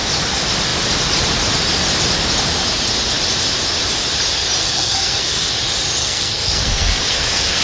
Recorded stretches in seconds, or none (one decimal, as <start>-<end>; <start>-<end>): 0.0-4.6; 5.5-6.0